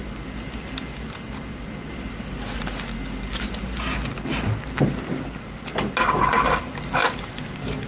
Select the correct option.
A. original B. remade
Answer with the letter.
A